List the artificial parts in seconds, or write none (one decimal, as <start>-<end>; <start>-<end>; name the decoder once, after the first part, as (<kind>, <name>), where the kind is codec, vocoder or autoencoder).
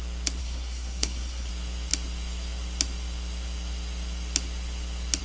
0.4-1.5 (codec, SNAC)